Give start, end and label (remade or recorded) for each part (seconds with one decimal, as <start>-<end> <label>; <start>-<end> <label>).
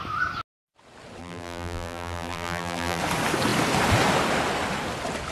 0.0-1.2 recorded; 1.2-3.0 remade; 3.0-5.3 recorded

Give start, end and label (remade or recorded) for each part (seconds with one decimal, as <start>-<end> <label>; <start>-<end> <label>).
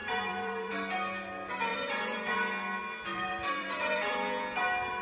0.0-0.7 remade; 0.7-1.7 recorded; 1.7-2.3 remade; 2.3-3.1 recorded; 3.1-4.0 remade; 4.0-5.0 recorded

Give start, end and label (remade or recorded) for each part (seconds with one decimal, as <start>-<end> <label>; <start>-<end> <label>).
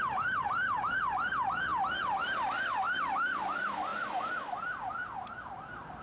0.0-6.0 recorded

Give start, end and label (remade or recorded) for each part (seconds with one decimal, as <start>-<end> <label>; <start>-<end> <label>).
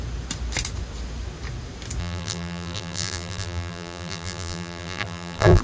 0.0-2.0 recorded; 2.0-5.6 remade